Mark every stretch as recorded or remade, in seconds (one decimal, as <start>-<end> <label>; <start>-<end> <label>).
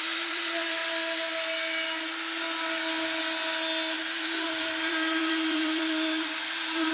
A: 0.0-0.8 remade; 0.8-4.0 recorded; 4.0-6.9 remade